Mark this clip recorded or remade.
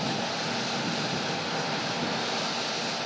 recorded